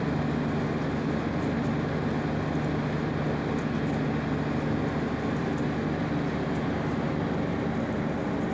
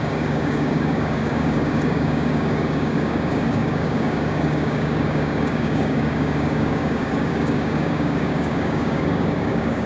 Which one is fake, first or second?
second